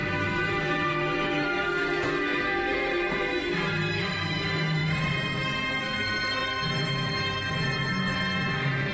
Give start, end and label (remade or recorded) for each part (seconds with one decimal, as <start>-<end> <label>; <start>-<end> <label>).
0.0-1.6 remade; 1.6-2.3 recorded; 2.3-3.2 remade; 3.2-8.9 recorded